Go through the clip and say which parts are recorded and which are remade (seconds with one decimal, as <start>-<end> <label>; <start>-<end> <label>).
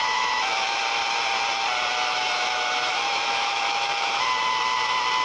0.0-0.8 remade; 0.8-2.1 recorded; 2.1-4.2 remade; 4.2-5.2 recorded